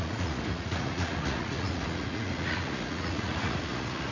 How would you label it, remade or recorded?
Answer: remade